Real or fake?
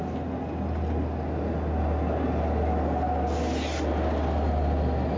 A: real